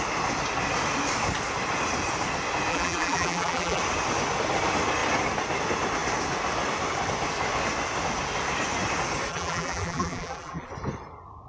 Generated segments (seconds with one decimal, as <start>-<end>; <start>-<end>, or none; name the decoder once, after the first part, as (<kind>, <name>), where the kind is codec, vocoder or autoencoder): 2.7-3.8 (vocoder, BigVGAN v2); 9.3-10.7